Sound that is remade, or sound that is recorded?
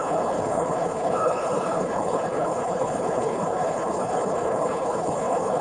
remade